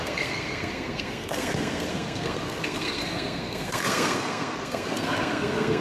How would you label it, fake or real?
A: fake